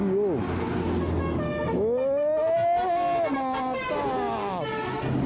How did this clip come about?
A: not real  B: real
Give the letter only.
B